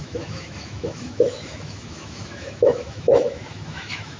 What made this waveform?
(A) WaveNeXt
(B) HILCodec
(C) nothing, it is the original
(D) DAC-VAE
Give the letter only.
D